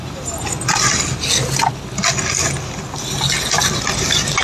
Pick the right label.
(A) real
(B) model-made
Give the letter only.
A